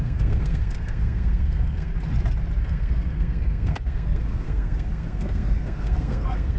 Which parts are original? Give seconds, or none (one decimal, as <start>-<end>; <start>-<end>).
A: 1.9-2.6